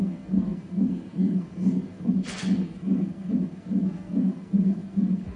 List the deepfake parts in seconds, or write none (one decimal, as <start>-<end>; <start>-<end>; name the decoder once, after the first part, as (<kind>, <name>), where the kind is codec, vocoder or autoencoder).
0.0-5.4 (codec, SNAC)